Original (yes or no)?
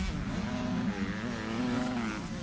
yes